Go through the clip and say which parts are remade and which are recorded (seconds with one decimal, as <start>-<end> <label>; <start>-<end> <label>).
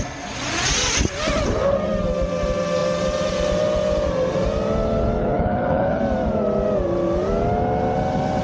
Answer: 0.0-5.2 recorded; 5.2-6.0 remade; 6.0-8.4 recorded